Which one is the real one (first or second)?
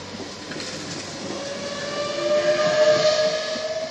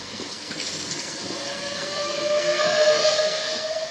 first